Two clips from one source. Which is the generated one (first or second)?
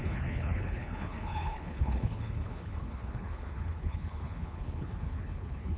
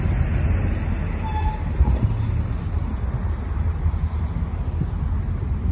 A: first